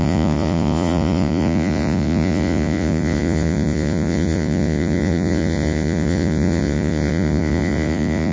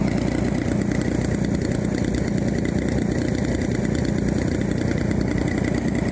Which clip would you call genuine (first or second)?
second